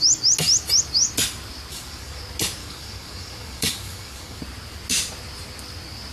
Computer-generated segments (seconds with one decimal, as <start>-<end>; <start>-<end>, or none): 1.7-2.2; 2.6-4.4